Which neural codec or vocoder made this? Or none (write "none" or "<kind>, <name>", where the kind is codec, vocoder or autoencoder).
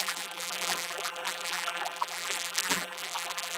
vocoder, BigVGAN v2